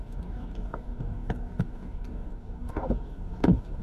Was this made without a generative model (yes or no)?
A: no